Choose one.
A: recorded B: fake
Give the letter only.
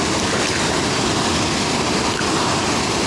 A